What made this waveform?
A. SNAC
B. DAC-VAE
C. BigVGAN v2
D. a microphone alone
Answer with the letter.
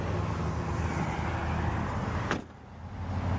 D